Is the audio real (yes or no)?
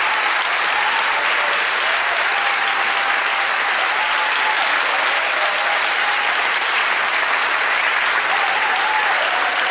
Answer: yes